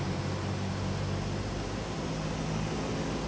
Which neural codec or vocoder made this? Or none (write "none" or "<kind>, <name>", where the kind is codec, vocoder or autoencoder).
none